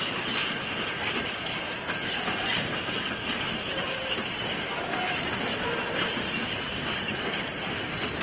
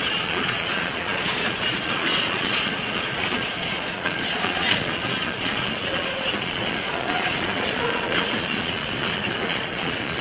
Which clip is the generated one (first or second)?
second